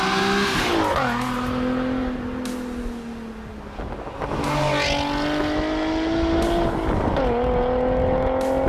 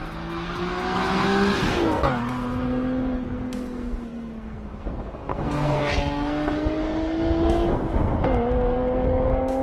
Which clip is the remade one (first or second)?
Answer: second